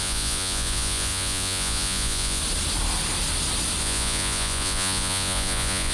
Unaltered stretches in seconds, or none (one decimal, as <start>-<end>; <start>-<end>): 2.4-3.8